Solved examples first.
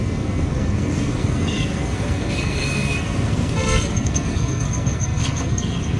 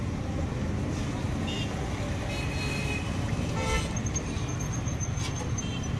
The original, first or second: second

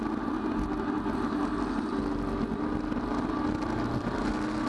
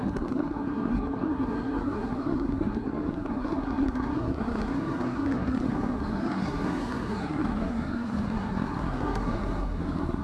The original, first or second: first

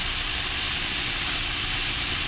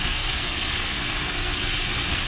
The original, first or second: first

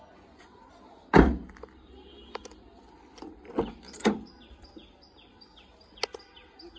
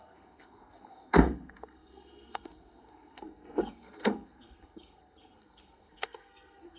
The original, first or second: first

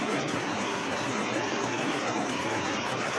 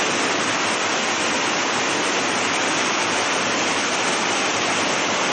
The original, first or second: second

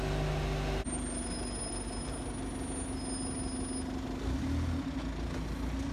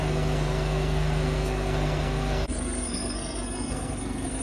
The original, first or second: first